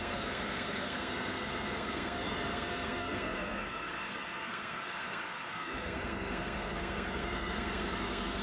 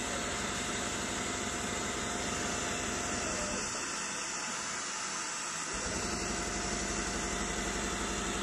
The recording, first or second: second